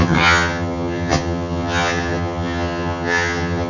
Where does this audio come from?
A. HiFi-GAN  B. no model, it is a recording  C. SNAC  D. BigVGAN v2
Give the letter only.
A